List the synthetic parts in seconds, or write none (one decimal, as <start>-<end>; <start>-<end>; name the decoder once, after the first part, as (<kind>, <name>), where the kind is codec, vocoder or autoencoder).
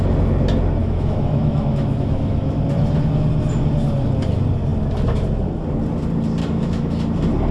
0.8-2.6 (autoencoder, DAC-VAE); 6.4-7.0